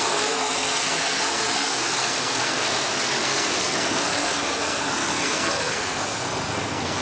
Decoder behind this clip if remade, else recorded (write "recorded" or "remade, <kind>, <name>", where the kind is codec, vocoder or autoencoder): remade, codec, SNAC